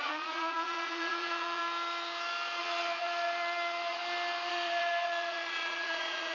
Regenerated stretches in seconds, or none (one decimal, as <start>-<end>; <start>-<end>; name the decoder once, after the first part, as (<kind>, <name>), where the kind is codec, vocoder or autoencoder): 0.0-1.6 (vocoder, Vocos); 2.6-4.0; 4.5-6.3